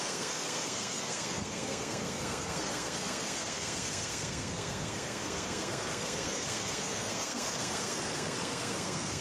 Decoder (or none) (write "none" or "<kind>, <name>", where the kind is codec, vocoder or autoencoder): codec, SNAC